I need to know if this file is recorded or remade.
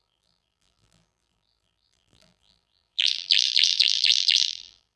remade